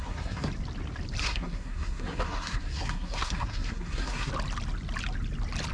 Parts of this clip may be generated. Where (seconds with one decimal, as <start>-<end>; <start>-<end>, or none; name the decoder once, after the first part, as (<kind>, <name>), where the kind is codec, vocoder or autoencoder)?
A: 0.0-0.5 (codec, SNAC); 1.2-4.3